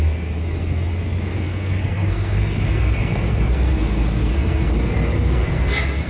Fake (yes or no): yes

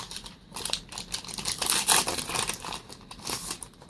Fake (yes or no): yes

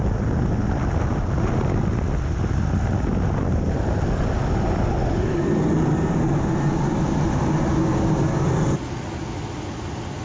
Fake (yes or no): no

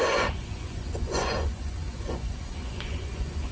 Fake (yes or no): yes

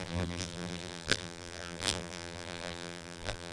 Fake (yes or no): yes